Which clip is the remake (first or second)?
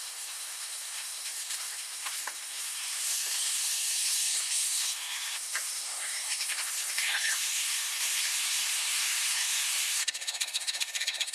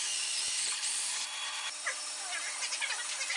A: first